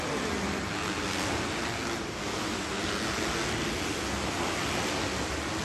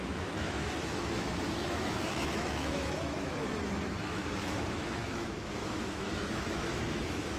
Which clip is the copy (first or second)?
second